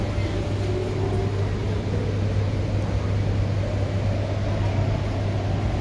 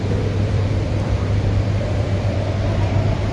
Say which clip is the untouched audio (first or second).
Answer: first